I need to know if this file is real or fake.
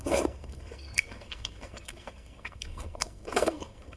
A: fake